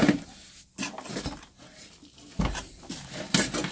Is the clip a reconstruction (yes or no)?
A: no